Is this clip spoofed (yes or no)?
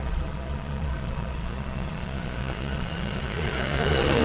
yes